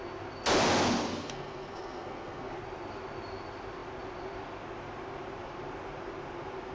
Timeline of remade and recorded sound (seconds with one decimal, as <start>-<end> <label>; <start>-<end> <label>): 0.0-1.1 recorded; 1.1-2.6 remade; 2.6-6.7 recorded